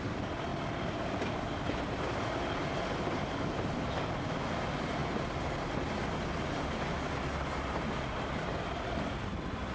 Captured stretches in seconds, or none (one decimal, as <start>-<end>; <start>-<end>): 0.0-9.7